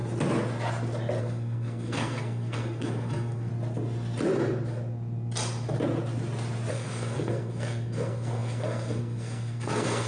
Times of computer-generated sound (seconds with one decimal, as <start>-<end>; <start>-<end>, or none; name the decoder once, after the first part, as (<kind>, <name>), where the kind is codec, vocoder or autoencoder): 1.2-3.5 (codec, SNAC); 6.7-10.1